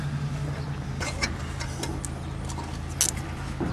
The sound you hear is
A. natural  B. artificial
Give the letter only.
A